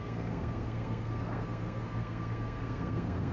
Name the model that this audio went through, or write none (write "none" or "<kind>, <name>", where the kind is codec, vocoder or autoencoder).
codec, SNAC